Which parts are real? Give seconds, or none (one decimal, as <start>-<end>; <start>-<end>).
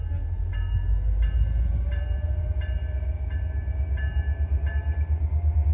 0.0-5.7